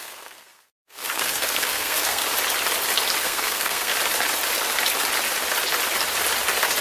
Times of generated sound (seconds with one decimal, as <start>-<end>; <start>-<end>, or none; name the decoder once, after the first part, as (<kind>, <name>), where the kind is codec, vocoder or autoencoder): 0.0-2.2 (codec, SNAC); 3.2-3.9